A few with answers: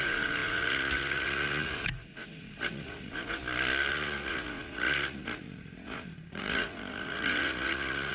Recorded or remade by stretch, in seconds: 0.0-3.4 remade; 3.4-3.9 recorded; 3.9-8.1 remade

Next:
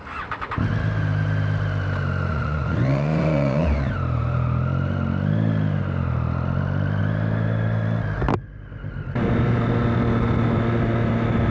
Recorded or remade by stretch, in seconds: 0.0-2.3 recorded; 2.3-3.9 remade; 3.9-11.5 recorded